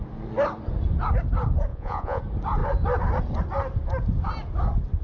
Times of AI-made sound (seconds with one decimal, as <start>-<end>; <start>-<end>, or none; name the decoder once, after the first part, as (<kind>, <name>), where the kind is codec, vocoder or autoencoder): 1.7-2.2 (vocoder, Vocos)